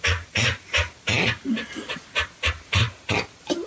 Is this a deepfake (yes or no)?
no